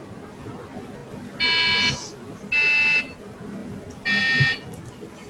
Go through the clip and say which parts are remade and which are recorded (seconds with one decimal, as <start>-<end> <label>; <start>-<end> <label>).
0.0-5.3 recorded